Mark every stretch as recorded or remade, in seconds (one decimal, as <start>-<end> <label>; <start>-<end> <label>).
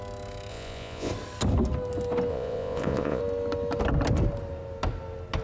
0.0-0.5 recorded; 0.5-1.1 remade; 1.1-2.3 recorded; 2.3-3.2 remade; 3.2-5.4 recorded